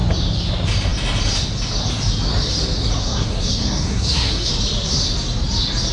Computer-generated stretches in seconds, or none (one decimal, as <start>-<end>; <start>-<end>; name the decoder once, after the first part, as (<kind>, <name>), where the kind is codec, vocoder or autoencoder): 3.0-4.5 (codec, SNAC)